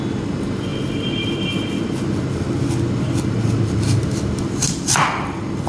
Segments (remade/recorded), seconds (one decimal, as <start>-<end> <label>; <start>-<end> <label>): 0.0-5.7 recorded

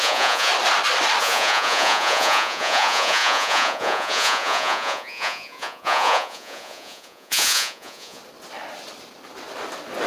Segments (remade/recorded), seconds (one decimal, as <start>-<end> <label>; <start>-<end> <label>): 0.0-0.5 remade; 0.5-1.2 recorded; 1.2-8.2 remade; 8.2-10.1 recorded

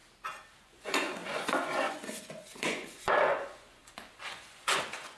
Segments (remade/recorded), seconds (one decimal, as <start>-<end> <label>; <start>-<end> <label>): 0.0-0.6 recorded; 0.6-5.2 remade

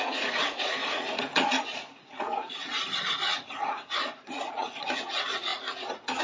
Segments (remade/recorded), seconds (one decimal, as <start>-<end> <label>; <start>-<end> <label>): 0.0-6.2 remade

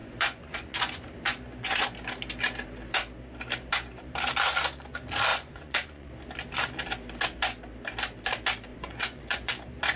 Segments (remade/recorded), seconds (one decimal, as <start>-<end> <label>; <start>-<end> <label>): 0.0-1.8 remade; 1.8-5.3 recorded; 5.3-6.1 remade; 6.1-8.7 recorded; 8.7-9.5 remade; 9.5-10.0 recorded

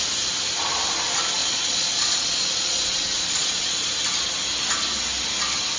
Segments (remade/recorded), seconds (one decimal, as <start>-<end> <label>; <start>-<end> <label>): 0.0-1.4 recorded; 1.4-3.9 remade; 3.9-5.8 recorded